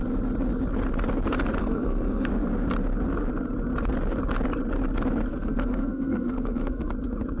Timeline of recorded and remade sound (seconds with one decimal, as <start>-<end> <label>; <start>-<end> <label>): 0.0-1.6 recorded; 1.6-2.3 remade; 2.3-5.3 recorded; 5.3-6.9 remade; 6.9-7.4 recorded